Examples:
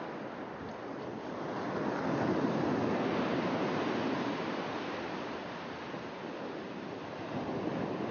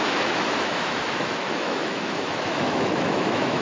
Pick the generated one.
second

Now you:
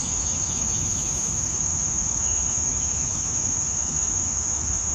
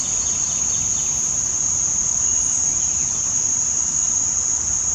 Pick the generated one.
first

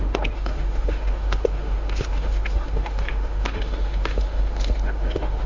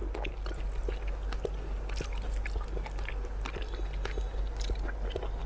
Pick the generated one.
first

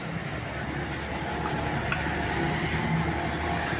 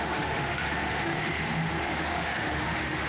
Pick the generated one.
second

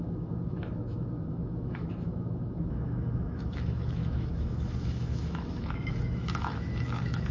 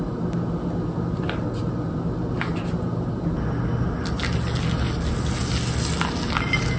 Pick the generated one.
first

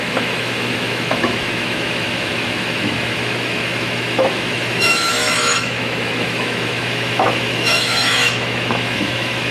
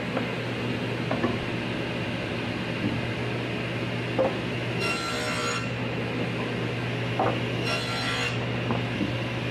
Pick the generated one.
first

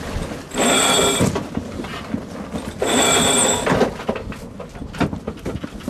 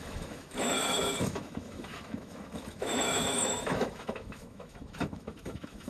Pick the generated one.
second